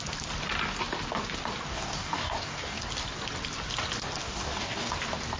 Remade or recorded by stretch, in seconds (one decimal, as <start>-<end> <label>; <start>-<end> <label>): 0.0-1.7 recorded; 1.7-2.8 remade; 2.8-4.2 recorded; 4.2-4.9 remade; 4.9-5.4 recorded